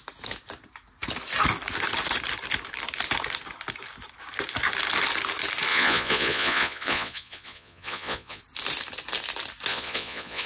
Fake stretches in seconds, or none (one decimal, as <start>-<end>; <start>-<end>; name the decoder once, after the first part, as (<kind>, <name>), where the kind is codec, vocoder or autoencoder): 5.7-8.4 (vocoder, Vocos); 9.7-10.5